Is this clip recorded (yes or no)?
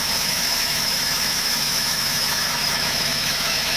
no